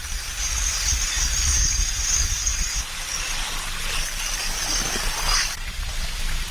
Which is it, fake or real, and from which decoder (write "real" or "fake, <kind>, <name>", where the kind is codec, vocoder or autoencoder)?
real